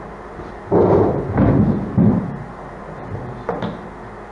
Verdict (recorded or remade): recorded